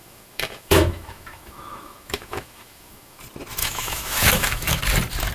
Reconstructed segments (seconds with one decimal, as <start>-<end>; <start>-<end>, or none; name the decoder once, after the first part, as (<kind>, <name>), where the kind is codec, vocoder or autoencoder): 0.0-3.2 (autoencoder, DAC-VAE); 3.6-4.8